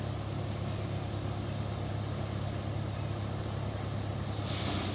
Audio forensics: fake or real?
real